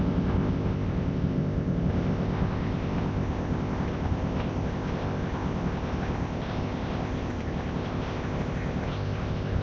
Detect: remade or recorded remade